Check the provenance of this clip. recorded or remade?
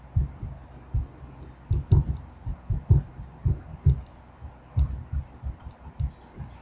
recorded